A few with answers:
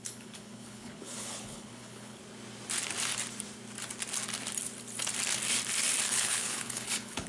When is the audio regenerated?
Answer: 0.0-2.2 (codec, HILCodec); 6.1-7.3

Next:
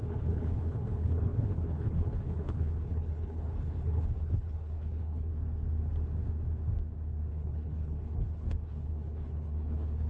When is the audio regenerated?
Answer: 0.0-5.3 (codec, HILCodec); 7.3-10.1

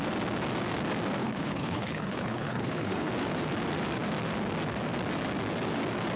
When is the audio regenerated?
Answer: 1.2-3.1 (codec, HILCodec)

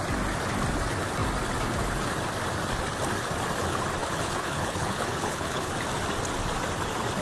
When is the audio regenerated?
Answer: 4.0-5.7 (codec, HILCodec)